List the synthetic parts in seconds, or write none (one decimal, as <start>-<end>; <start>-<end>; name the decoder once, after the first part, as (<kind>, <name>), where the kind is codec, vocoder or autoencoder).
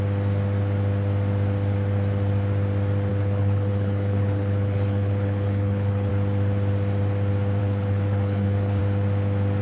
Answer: 3.1-6.1 (codec, HILCodec); 7.6-8.8